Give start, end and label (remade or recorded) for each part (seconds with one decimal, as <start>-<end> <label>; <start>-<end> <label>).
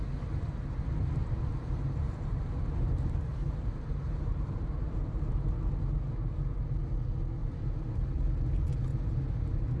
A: 0.0-1.2 recorded; 1.2-5.2 remade; 5.2-7.4 recorded; 7.4-8.1 remade; 8.1-8.9 recorded; 8.9-9.8 remade